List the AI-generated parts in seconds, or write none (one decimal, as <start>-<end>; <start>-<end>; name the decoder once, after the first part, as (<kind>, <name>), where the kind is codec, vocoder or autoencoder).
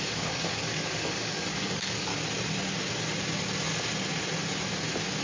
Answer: 0.0-2.1 (codec, DAC)